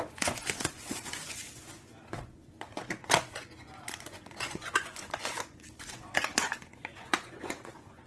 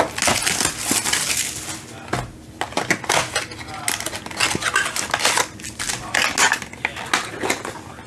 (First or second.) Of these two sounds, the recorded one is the second